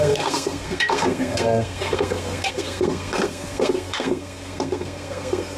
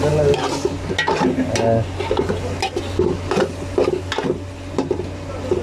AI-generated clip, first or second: first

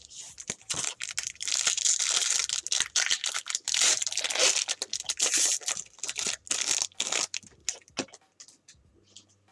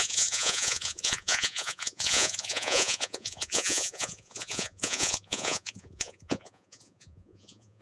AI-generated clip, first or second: second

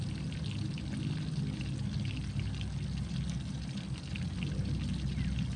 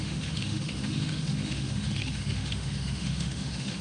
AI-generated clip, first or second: second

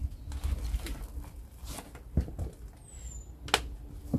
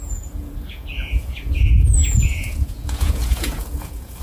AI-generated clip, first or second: second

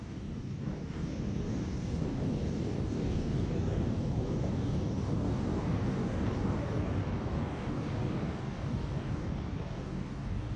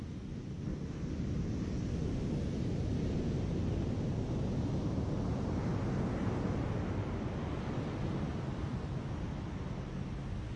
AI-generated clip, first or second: first